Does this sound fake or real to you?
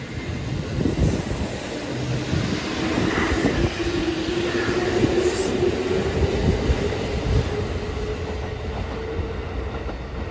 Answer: real